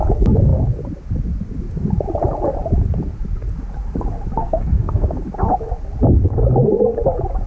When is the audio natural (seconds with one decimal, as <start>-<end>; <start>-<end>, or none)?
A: 0.0-4.4; 5.2-7.5